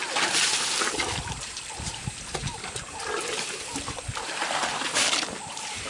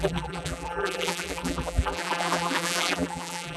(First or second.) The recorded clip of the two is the first